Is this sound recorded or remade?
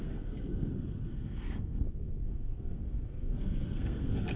remade